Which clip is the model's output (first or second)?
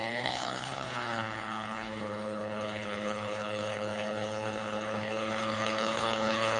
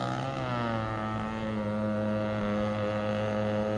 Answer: first